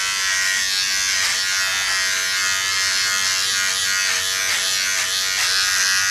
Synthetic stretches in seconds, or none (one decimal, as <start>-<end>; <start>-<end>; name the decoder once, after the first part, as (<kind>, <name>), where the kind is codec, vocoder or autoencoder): none